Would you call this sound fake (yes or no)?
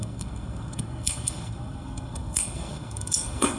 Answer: yes